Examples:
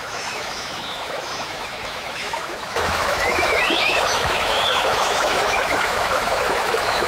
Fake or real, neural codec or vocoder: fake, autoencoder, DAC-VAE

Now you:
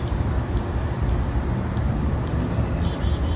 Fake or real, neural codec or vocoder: real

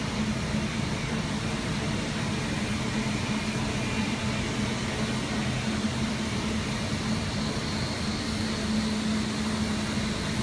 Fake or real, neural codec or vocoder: real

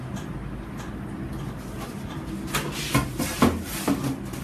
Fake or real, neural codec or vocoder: real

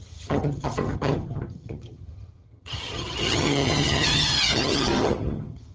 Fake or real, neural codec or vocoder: fake, vocoder, HiFi-GAN